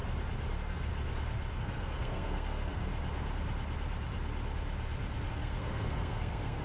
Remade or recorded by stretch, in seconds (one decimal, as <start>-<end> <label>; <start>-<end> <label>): 0.0-0.5 recorded; 0.5-0.9 remade; 0.9-1.5 recorded; 1.5-2.9 remade; 2.9-5.3 recorded; 5.3-6.6 remade